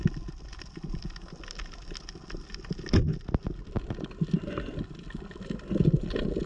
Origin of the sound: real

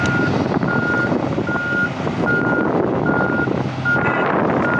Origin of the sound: real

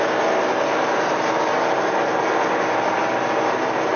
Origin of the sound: real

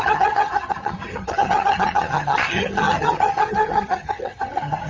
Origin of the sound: fake